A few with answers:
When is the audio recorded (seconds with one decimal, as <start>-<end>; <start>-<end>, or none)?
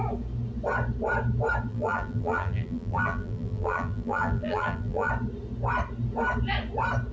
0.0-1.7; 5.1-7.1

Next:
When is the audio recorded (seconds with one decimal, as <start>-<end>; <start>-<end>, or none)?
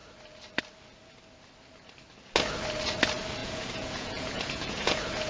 0.0-3.4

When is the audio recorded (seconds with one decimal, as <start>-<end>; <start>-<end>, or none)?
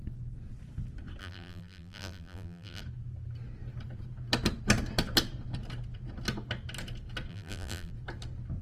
0.0-1.2; 2.8-7.3; 7.9-8.6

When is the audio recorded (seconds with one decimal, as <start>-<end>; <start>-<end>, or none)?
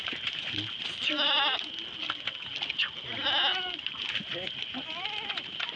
0.0-5.8